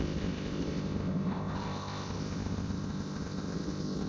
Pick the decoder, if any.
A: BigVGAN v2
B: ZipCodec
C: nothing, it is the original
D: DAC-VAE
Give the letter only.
B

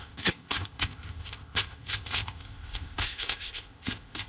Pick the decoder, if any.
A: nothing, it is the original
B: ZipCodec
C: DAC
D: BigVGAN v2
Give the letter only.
B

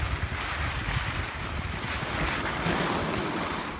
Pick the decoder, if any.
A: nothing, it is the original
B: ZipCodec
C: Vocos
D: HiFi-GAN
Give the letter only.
A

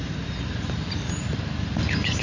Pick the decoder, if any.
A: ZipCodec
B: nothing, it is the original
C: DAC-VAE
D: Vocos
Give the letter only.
B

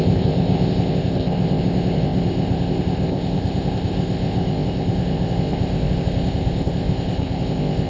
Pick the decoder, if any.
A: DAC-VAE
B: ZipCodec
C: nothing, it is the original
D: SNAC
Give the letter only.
B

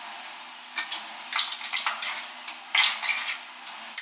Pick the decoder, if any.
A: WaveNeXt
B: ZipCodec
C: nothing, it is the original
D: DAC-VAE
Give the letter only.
C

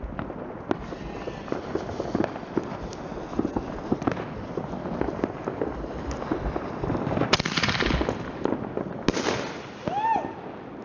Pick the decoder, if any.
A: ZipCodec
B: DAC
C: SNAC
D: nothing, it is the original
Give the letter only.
D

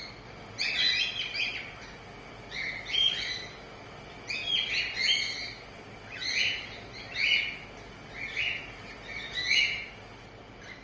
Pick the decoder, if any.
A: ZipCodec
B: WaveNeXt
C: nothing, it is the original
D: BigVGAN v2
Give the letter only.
C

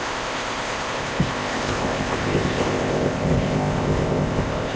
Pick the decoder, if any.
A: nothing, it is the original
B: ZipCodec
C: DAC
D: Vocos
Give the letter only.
B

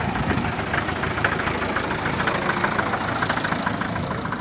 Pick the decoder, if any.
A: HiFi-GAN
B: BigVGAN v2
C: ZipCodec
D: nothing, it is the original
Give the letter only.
D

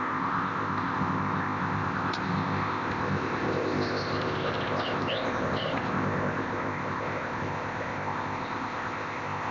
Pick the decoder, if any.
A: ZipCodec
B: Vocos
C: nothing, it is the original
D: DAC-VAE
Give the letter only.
A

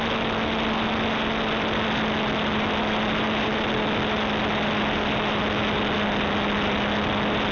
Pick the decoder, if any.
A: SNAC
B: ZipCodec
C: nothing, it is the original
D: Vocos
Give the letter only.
C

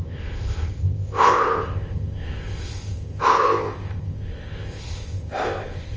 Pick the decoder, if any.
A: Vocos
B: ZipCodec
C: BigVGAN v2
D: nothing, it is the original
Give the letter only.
B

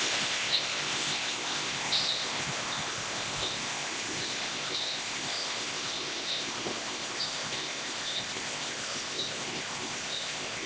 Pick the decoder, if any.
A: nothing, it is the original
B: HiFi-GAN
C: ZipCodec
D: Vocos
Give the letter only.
C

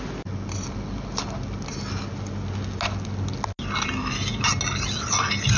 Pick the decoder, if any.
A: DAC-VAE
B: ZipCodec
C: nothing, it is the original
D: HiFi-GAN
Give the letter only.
C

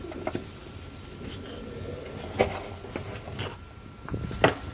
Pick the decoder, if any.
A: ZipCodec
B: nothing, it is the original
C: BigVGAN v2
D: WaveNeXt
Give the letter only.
B